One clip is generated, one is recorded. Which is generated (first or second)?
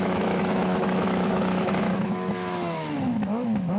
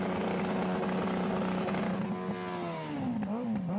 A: first